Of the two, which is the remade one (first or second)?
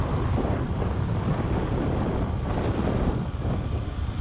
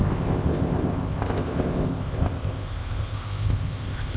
second